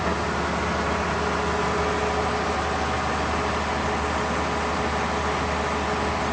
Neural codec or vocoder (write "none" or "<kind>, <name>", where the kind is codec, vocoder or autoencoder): none